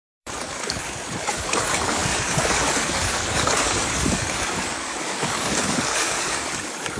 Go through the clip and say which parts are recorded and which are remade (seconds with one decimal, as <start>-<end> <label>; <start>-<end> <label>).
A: 0.0-7.0 remade